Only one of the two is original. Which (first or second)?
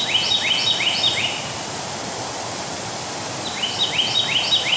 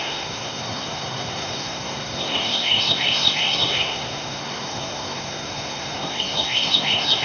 first